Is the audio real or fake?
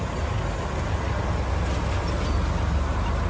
real